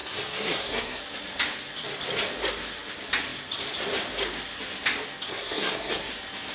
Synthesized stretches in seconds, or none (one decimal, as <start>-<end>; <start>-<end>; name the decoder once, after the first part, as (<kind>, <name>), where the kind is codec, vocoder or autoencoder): 0.0-1.0 (codec, SNAC); 5.3-6.1